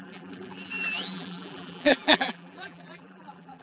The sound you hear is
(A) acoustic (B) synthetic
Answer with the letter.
B